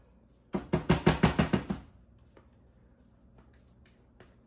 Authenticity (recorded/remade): recorded